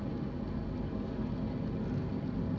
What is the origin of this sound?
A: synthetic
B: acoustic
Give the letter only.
B